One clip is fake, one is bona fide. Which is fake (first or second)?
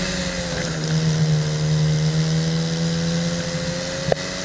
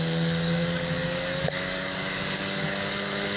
second